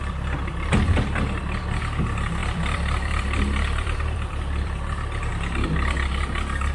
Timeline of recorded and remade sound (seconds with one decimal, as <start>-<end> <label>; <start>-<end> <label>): 0.0-2.4 recorded; 2.4-5.3 remade; 5.3-6.7 recorded